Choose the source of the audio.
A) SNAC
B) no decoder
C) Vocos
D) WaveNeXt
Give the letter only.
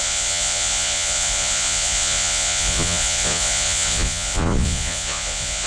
C